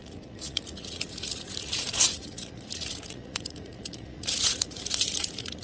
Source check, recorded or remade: remade